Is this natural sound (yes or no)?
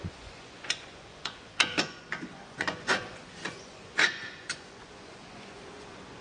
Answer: no